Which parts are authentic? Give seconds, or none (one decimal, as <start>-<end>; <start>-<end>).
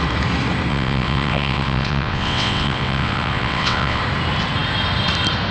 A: 0.0-0.7; 4.0-5.5